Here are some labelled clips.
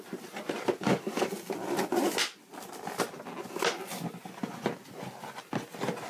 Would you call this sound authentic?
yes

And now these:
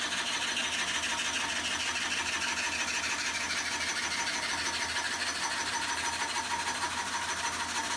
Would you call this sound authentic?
yes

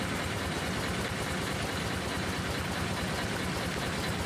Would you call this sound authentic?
yes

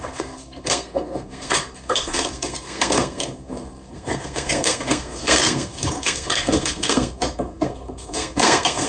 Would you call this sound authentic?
no